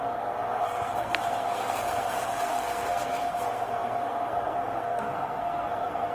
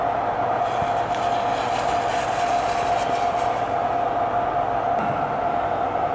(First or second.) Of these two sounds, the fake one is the first